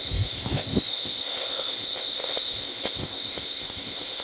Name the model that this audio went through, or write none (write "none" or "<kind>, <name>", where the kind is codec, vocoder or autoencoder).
codec, ZipCodec